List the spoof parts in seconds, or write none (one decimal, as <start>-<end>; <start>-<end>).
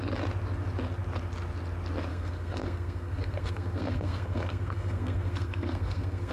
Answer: 2.1-6.3